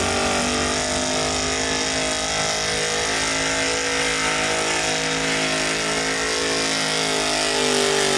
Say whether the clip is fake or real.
real